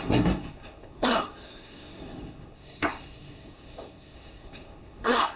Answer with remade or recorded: remade